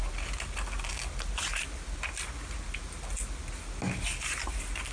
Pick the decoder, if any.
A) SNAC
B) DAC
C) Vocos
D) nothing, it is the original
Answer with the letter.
D